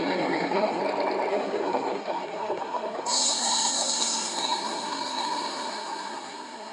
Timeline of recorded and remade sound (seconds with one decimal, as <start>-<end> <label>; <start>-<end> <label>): 0.0-0.8 remade; 0.8-1.3 recorded; 1.3-6.7 remade